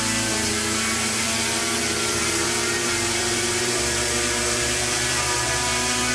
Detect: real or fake fake